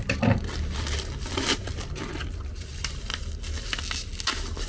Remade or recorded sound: recorded